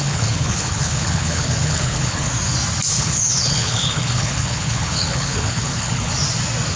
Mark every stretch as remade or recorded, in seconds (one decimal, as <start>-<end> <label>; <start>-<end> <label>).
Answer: 0.0-2.3 remade; 2.3-2.9 recorded; 2.9-6.1 remade; 6.1-6.8 recorded